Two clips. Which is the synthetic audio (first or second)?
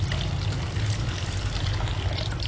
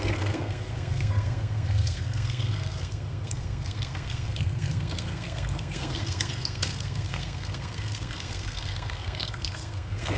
second